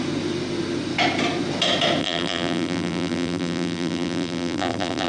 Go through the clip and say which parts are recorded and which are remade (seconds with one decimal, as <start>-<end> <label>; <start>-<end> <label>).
0.0-2.0 recorded; 2.0-5.1 remade